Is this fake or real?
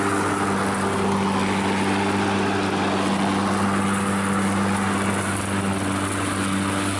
real